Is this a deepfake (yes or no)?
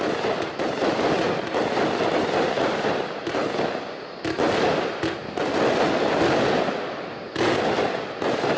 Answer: no